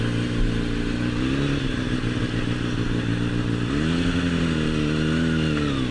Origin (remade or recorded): recorded